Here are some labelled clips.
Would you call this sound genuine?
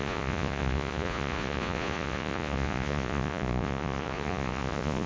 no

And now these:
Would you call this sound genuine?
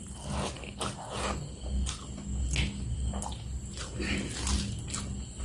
yes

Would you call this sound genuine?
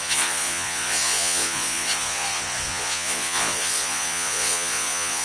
no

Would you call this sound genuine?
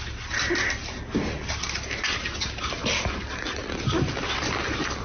yes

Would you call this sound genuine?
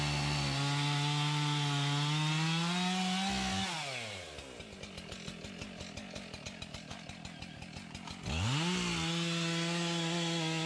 yes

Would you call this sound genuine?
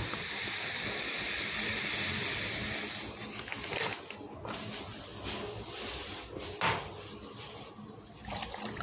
yes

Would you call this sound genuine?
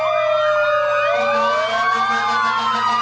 yes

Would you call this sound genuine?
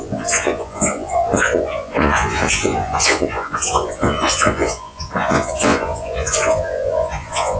no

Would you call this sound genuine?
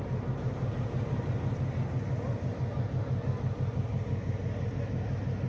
yes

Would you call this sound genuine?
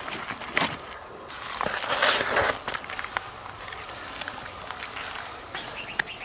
yes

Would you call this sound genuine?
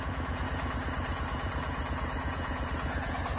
no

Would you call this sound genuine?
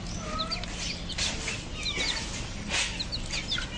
yes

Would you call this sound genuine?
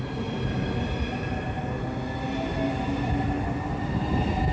yes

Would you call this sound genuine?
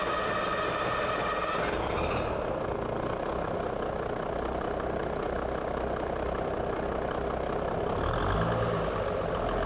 yes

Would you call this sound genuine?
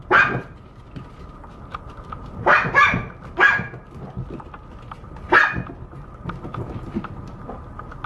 yes